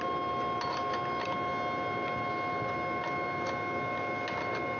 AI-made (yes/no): no